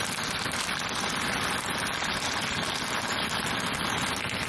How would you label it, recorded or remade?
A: recorded